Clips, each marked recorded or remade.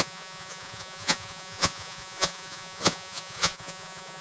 remade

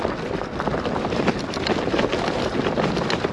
recorded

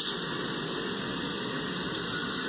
recorded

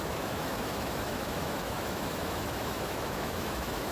remade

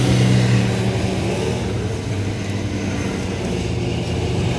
recorded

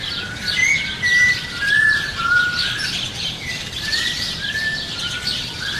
remade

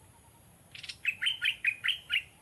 remade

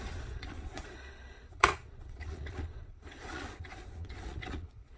remade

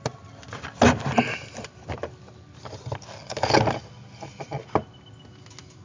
recorded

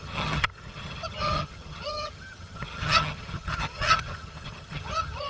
remade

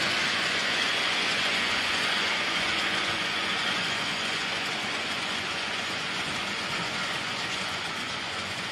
remade